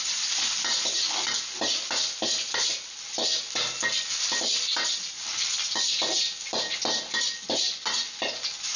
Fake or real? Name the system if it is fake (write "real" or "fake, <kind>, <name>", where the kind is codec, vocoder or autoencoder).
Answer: real